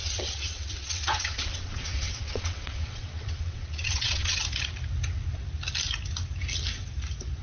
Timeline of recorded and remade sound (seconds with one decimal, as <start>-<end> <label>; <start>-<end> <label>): 0.0-4.4 remade; 4.4-7.4 recorded